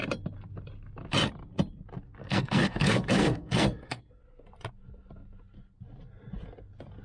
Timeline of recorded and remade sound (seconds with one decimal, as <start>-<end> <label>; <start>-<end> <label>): 0.0-2.2 recorded; 2.2-4.2 remade; 4.2-7.0 recorded